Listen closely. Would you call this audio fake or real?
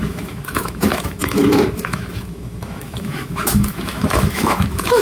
fake